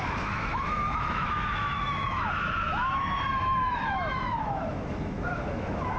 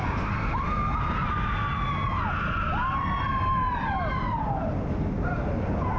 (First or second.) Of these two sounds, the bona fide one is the second